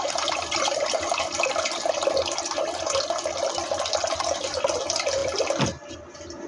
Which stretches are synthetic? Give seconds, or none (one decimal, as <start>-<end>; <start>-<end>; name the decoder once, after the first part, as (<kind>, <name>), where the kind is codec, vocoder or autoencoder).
none